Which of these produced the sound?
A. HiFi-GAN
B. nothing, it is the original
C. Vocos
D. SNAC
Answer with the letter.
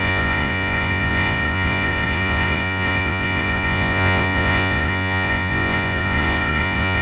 C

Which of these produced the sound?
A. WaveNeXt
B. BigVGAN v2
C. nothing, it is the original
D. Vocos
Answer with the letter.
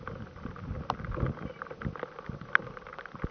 C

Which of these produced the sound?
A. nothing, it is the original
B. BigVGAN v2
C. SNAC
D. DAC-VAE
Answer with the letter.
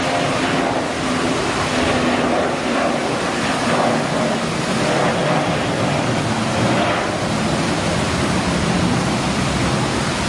A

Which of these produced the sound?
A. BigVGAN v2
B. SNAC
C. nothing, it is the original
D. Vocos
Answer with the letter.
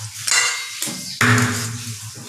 C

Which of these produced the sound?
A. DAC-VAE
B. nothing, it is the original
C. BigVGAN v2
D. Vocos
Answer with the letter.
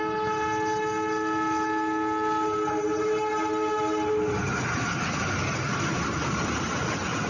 B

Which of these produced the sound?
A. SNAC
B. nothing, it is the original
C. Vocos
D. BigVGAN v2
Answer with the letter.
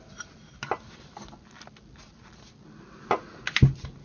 B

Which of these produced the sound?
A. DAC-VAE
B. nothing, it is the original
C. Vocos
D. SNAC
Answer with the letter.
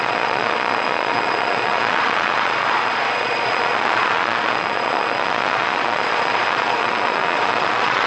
C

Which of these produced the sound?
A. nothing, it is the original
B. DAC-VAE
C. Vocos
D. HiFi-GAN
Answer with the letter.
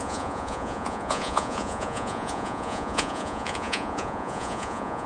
C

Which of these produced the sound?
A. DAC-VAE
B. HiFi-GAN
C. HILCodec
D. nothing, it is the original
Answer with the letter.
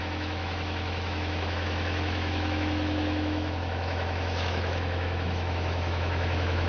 A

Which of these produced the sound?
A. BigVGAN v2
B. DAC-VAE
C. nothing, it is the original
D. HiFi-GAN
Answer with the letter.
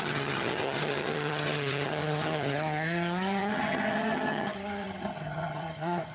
D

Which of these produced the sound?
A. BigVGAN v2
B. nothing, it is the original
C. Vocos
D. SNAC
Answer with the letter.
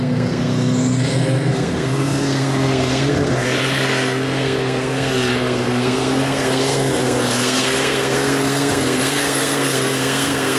D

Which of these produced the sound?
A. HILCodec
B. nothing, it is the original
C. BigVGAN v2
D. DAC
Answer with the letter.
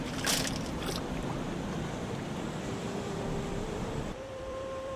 C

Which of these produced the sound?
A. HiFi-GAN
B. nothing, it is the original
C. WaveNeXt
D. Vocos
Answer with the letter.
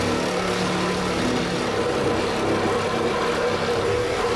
B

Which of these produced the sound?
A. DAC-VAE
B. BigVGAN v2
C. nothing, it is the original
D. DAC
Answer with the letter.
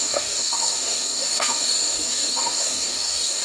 D